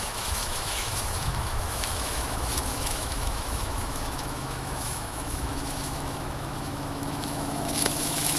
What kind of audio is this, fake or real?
fake